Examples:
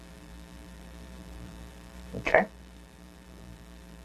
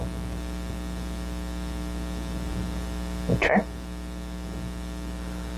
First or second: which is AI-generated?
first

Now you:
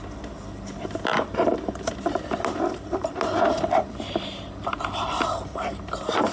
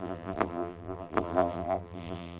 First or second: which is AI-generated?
second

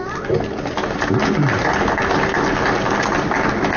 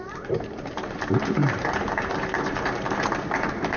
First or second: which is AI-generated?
second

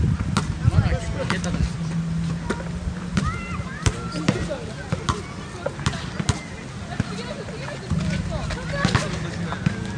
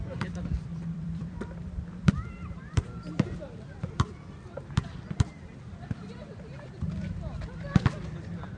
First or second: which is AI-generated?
second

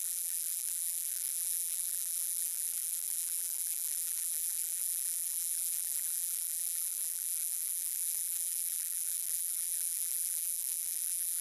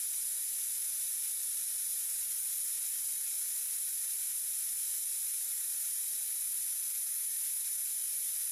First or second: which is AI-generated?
first